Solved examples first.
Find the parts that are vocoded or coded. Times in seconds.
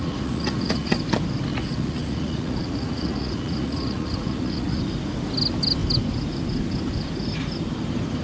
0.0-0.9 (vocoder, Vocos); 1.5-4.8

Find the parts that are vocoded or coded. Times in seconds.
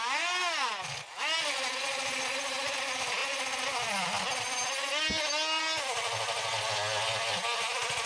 none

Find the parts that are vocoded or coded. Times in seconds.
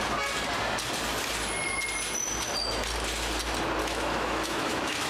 3.8-5.1 (autoencoder, DAC-VAE)